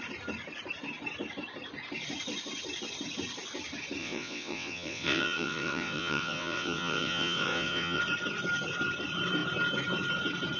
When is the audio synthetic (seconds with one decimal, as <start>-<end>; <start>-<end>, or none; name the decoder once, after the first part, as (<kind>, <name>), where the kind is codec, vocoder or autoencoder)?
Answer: 4.0-8.0 (vocoder, WaveNeXt)